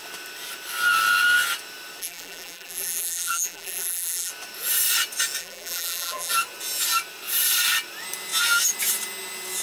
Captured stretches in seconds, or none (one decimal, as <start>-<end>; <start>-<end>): 0.0-2.0; 4.3-5.4; 6.3-9.6